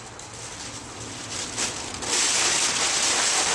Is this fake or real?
real